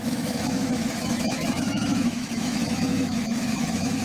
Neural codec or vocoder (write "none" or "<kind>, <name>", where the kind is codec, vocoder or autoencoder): autoencoder, DAC-VAE